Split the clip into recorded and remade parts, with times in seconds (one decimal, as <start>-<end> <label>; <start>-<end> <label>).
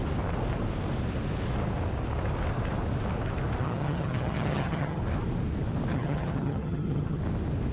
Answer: 0.0-3.6 recorded; 3.6-5.0 remade; 5.0-5.9 recorded; 5.9-7.2 remade; 7.2-7.7 recorded